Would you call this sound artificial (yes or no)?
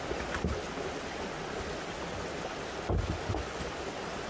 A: no